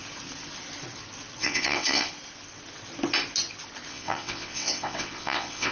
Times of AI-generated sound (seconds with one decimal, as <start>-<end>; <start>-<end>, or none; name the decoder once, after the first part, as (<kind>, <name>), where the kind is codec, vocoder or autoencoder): 1.4-2.1 (vocoder, WaveNeXt); 3.9-5.7

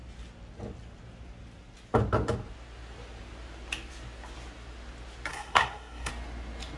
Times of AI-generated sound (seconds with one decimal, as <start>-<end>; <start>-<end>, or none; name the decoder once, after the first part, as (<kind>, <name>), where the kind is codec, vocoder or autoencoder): 5.3-6.1 (codec, SNAC)

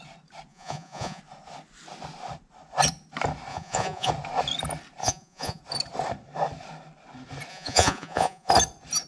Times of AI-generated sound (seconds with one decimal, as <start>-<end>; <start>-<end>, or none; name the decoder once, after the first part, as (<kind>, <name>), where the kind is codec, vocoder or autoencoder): 0.5-1.2 (vocoder, Vocos); 3.5-4.1; 5.0-5.6; 7.5-8.5

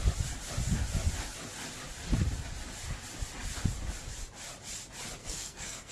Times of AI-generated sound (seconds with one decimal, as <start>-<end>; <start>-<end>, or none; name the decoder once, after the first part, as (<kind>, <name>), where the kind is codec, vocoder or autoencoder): 5.2-5.9 (codec, SNAC)

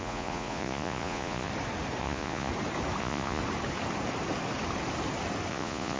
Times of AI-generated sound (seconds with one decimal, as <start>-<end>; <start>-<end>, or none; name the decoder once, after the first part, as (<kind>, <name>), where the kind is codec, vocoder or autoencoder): 0.0-1.5 (vocoder, Vocos); 2.0-2.5; 3.0-3.4; 5.5-6.0

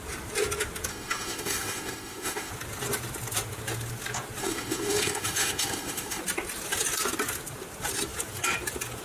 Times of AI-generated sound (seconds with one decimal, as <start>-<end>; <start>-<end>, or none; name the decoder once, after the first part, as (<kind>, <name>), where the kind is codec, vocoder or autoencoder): 0.9-2.5 (autoencoder, DAC-VAE); 4.4-6.2

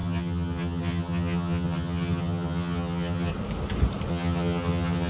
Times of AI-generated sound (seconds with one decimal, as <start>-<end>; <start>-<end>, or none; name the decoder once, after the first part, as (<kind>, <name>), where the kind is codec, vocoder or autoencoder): 0.0-3.3 (vocoder, HiFi-GAN); 4.1-5.1

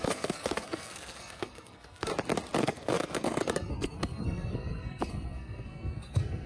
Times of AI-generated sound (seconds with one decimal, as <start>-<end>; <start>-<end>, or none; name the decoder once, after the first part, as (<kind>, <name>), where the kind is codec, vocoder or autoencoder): 0.0-2.1 (codec, SNAC); 2.6-6.5